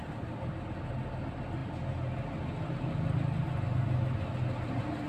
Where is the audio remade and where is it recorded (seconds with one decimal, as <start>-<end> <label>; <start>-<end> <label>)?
0.0-5.1 recorded